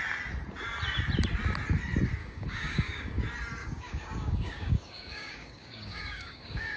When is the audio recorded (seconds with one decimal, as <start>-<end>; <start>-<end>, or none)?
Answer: 0.0-2.2; 3.2-3.6